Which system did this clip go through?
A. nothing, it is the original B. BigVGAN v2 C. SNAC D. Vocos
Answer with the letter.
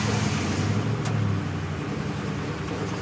A